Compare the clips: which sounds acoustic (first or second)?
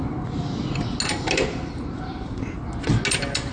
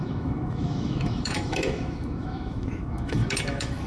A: first